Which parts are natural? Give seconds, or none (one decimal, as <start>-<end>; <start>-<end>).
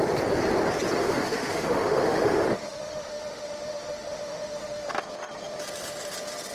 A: 0.0-1.0; 4.9-6.5